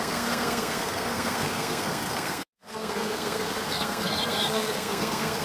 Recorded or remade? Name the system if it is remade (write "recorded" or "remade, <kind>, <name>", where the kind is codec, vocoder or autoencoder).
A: remade, codec, SNAC